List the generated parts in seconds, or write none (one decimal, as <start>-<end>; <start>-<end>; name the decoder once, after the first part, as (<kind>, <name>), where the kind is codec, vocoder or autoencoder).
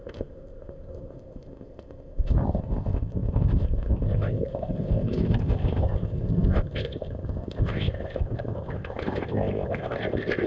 0.0-10.5 (codec, ZipCodec)